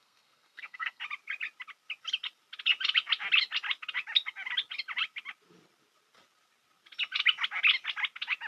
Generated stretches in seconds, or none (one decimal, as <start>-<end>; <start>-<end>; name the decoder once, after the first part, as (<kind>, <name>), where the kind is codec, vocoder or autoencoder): 0.0-1.0 (codec, SNAC)